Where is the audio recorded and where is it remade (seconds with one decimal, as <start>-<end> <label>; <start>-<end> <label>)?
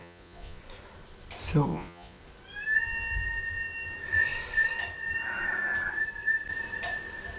0.0-0.6 remade; 0.6-1.7 recorded; 1.7-2.2 remade; 2.2-7.4 recorded